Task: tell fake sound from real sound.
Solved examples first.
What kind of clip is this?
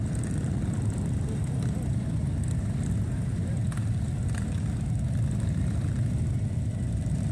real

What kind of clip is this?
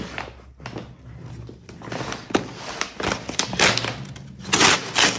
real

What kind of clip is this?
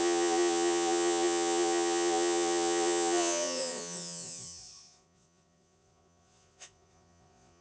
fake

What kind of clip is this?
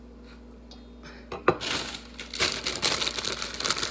real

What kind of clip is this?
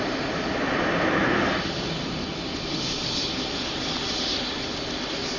real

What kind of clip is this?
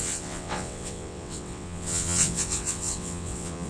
fake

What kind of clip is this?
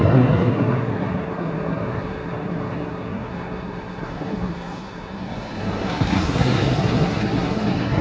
fake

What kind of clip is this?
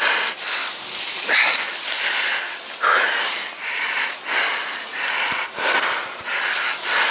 real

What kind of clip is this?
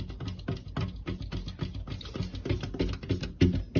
real